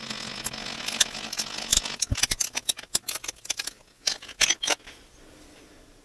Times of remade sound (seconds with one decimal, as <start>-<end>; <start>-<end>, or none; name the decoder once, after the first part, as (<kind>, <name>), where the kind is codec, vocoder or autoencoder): none

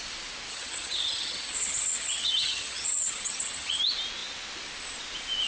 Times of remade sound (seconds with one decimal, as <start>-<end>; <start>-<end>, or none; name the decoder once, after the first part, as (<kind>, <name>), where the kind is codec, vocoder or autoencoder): 0.5-3.8 (vocoder, HiFi-GAN)

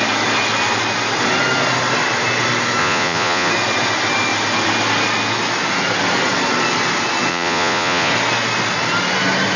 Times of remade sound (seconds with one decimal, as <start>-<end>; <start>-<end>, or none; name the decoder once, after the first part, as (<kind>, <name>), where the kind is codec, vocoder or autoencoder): 2.8-3.5 (vocoder, Vocos); 7.3-8.1

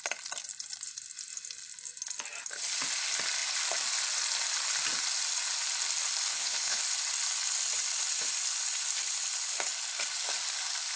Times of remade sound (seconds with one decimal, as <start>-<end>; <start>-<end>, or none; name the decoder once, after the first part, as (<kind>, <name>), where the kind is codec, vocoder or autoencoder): 6.3-6.8 (codec, HILCodec)